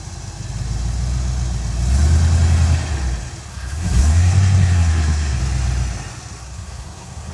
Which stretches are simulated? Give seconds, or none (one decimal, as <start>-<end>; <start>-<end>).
3.5-5.4; 6.4-7.3